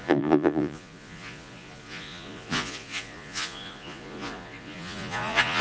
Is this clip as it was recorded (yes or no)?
no